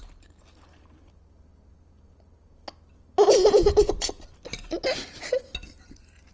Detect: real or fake real